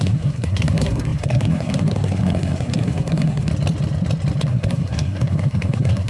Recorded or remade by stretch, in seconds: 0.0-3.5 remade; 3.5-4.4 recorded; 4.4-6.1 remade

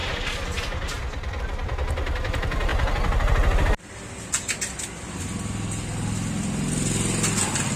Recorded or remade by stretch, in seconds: 0.0-7.8 recorded

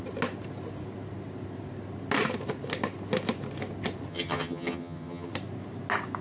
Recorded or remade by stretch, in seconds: 0.0-4.1 recorded; 4.1-5.3 remade; 5.3-6.2 recorded

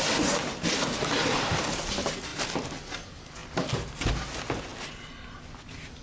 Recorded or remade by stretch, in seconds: 0.0-6.0 recorded

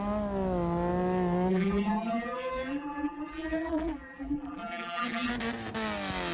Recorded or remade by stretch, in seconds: 0.0-1.5 recorded; 1.5-5.3 remade; 5.3-6.3 recorded

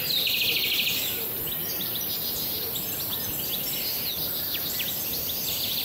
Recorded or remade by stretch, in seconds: 0.0-1.6 recorded; 1.6-2.6 remade; 2.6-5.8 recorded